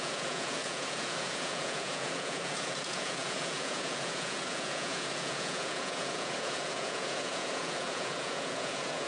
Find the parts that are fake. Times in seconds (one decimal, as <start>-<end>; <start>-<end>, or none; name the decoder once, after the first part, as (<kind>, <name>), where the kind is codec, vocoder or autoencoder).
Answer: 0.0-9.1 (vocoder, Vocos)